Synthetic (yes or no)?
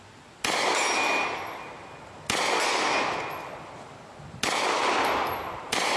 no